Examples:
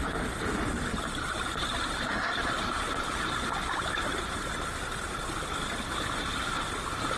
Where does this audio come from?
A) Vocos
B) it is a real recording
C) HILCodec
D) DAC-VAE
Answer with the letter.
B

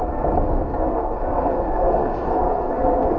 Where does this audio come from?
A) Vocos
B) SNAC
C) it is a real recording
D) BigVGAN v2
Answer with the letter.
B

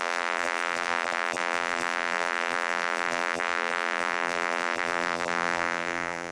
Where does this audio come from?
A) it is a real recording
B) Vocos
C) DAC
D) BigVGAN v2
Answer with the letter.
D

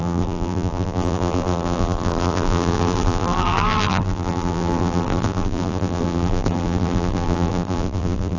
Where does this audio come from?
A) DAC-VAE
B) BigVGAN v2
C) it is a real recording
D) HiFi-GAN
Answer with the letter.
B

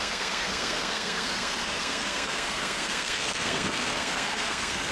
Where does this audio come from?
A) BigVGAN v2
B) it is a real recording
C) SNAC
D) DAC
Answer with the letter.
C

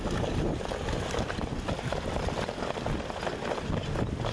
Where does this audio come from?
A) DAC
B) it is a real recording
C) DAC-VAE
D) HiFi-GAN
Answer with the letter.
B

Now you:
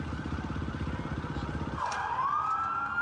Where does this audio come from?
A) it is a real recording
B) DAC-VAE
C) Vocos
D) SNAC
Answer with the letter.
A